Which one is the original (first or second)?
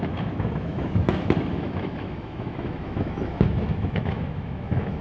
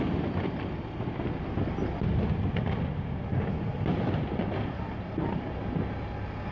second